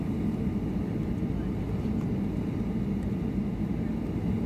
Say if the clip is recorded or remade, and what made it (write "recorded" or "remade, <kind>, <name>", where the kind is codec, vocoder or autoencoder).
recorded